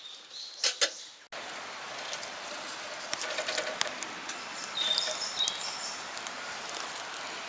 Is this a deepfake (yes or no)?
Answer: no